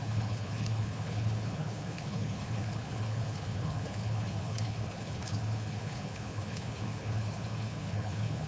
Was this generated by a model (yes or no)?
yes